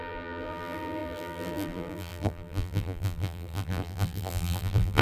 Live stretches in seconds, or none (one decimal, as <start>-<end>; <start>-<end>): none